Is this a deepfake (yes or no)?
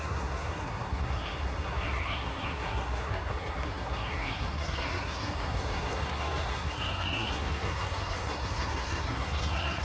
yes